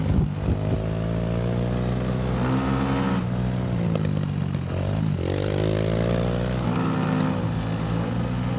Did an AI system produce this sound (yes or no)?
no